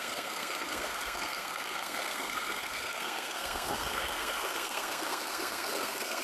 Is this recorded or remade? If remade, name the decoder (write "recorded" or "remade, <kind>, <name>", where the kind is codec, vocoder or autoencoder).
remade, codec, SNAC